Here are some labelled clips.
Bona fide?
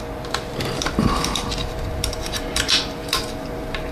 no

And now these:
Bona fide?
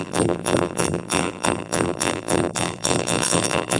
no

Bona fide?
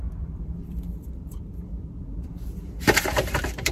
no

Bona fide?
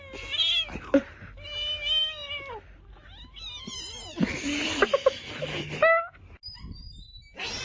yes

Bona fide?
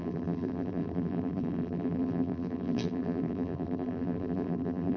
no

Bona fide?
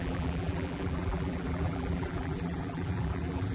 no